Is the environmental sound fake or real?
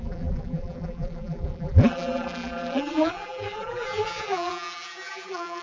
fake